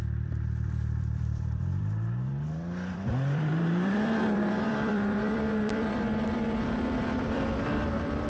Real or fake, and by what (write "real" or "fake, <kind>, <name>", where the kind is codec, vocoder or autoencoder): fake, vocoder, BigVGAN v2